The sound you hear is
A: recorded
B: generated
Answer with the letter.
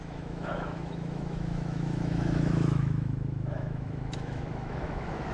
B